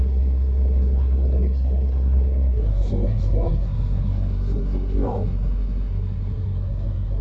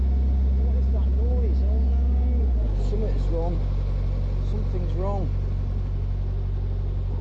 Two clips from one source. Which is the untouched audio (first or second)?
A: second